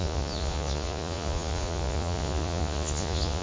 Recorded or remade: remade